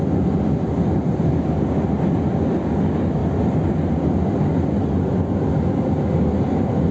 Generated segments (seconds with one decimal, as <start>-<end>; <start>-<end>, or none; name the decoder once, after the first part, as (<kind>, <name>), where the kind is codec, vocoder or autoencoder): none